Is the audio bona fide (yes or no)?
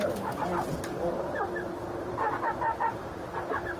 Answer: no